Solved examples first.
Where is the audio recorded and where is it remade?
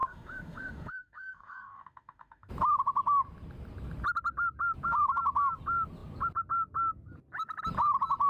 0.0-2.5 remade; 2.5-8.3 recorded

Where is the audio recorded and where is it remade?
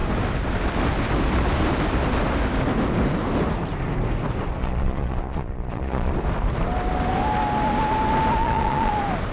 0.0-4.6 recorded; 4.6-6.1 remade; 6.1-8.4 recorded; 8.4-8.9 remade; 8.9-9.3 recorded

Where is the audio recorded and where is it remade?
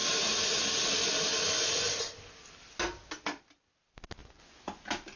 0.0-4.2 recorded; 4.2-4.8 remade; 4.8-5.2 recorded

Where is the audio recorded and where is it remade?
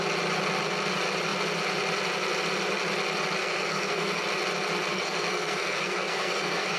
0.0-3.4 recorded; 3.4-4.2 remade; 4.2-4.9 recorded; 4.9-6.8 remade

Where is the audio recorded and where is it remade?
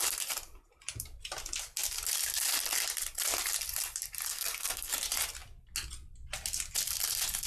0.0-4.3 recorded; 4.3-4.9 remade; 4.9-7.5 recorded